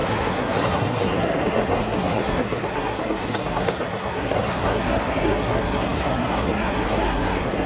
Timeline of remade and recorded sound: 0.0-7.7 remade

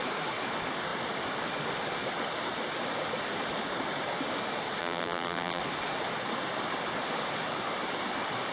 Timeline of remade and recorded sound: 0.0-4.8 recorded; 4.8-5.6 remade; 5.6-8.5 recorded

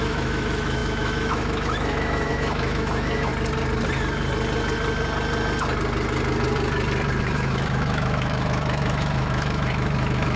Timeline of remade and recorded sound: 0.0-3.3 remade; 3.3-7.2 recorded; 7.2-10.4 remade

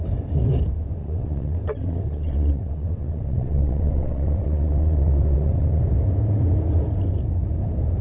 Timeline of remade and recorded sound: 0.0-1.0 recorded; 1.0-5.8 remade; 5.8-8.0 recorded